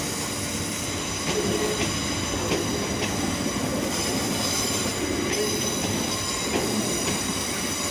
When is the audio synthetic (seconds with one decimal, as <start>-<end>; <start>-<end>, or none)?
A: none